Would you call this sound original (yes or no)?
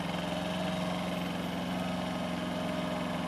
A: yes